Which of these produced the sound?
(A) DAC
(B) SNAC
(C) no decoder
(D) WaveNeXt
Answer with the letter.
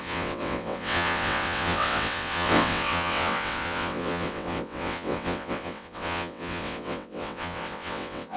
D